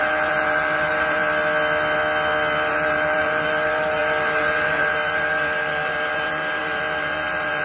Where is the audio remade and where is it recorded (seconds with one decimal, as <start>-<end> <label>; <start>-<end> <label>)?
0.0-1.2 remade; 1.2-2.7 recorded; 2.7-7.6 remade